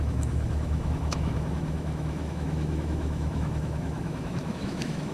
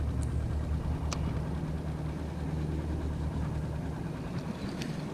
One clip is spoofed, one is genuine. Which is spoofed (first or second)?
first